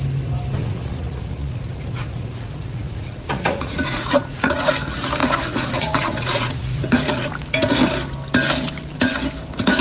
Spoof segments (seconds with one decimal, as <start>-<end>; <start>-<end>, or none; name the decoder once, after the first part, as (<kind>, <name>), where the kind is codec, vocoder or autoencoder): 0.6-4.7 (vocoder, Vocos); 5.2-7.3